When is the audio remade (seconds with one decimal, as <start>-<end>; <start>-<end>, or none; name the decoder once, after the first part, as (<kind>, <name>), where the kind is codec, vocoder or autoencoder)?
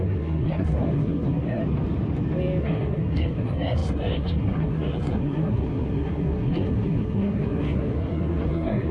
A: 0.0-1.6 (codec, SNAC); 2.6-8.9